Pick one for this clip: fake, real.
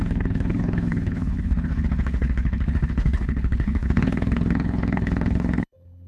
fake